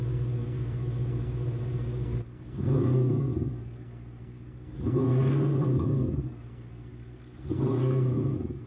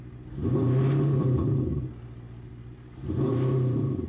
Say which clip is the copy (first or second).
first